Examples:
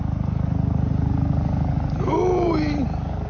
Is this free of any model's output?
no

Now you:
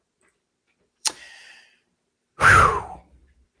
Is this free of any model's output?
no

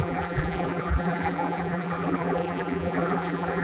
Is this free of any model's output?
no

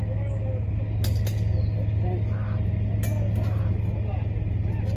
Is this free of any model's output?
yes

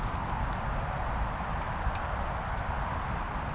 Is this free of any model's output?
yes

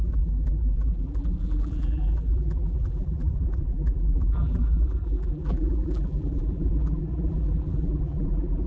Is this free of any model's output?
no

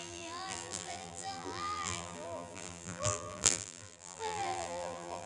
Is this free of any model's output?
no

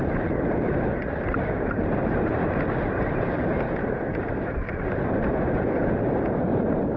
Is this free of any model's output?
no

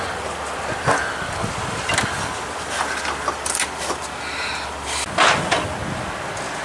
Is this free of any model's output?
yes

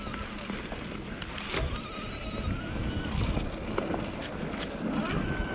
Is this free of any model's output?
yes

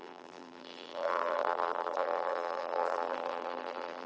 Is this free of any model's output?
no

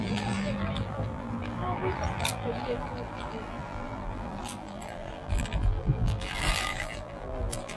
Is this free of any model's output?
no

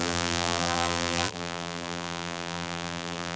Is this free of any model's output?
no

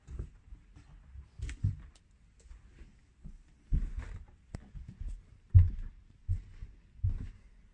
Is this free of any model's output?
yes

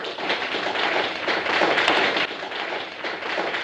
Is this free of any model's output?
no